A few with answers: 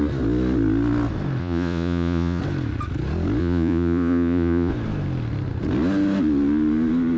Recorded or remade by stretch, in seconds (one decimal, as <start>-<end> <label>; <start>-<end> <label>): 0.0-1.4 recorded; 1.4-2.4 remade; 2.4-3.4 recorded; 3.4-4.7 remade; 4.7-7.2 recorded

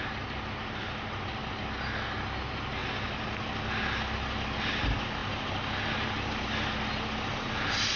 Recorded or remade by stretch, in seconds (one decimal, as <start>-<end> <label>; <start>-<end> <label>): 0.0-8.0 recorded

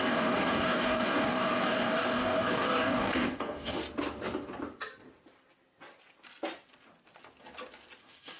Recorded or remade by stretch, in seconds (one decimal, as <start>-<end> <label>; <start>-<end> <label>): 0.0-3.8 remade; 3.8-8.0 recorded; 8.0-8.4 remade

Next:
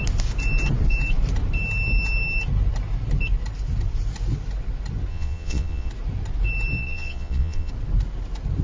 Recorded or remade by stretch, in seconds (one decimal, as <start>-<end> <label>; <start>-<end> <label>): 0.0-5.1 recorded; 5.1-5.9 remade; 5.9-6.8 recorded; 6.8-7.7 remade; 7.7-8.6 recorded